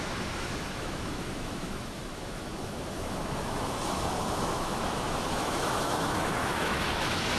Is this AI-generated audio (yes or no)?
yes